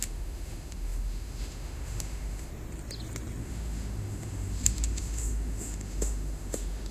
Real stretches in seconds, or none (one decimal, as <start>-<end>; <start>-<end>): 2.5-3.4